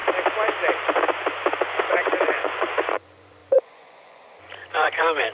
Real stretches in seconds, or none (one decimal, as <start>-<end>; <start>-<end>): 0.0-1.8